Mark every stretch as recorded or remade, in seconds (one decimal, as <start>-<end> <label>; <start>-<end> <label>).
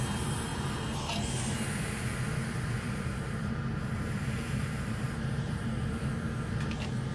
0.0-2.4 recorded; 2.4-6.1 remade; 6.1-7.1 recorded